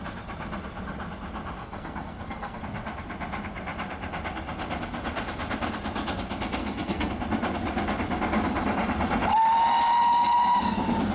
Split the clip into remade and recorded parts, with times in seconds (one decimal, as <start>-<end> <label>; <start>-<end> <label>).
0.0-1.6 recorded; 1.6-2.6 remade; 2.6-6.6 recorded; 6.6-7.1 remade; 7.1-11.1 recorded